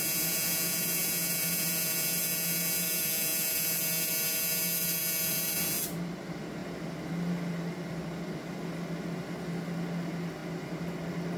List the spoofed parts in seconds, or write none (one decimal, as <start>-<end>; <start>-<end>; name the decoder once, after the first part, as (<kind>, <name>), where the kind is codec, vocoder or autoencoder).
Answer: none